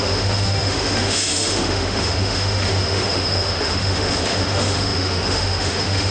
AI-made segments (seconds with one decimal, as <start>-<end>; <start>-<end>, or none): 0.0-6.1